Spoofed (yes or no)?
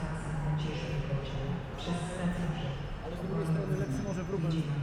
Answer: no